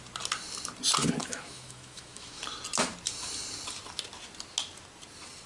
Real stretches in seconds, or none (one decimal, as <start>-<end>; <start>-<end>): 0.0-1.2; 2.4-5.5